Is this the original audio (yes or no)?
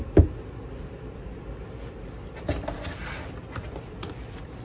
no